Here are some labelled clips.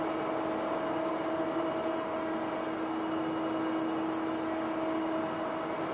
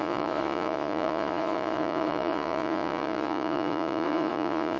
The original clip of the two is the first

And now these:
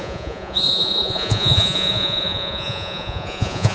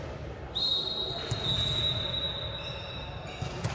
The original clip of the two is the second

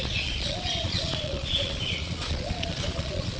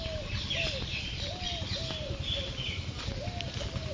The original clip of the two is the second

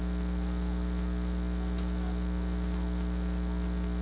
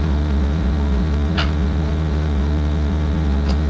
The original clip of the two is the first